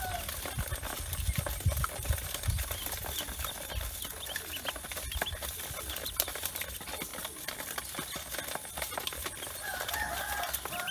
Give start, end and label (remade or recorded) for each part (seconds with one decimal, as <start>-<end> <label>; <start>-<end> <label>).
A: 0.0-10.9 recorded